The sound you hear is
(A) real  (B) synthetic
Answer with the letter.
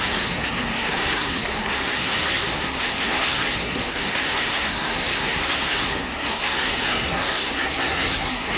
B